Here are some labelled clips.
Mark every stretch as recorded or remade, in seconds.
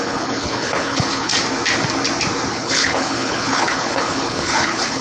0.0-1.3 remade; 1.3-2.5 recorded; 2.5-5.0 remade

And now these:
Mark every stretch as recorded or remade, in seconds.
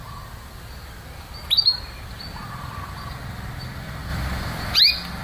0.0-5.2 recorded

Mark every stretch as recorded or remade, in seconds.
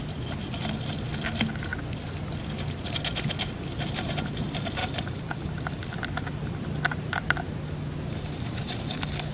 0.0-4.8 recorded; 4.8-5.4 remade; 5.4-9.3 recorded